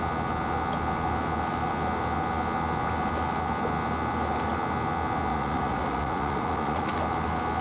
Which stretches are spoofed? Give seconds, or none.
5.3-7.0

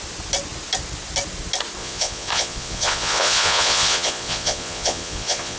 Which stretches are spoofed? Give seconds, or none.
1.8-5.6